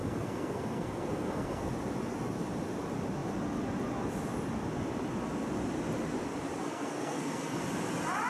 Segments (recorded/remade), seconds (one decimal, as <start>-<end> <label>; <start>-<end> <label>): 0.0-1.7 remade; 1.7-6.6 recorded; 6.6-7.6 remade; 7.6-8.3 recorded